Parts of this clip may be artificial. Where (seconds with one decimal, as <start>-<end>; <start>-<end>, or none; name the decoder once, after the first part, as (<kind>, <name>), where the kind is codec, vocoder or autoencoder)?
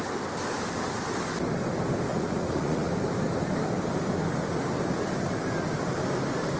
2.1-2.9 (vocoder, Vocos)